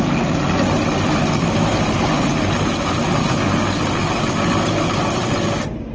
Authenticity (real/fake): real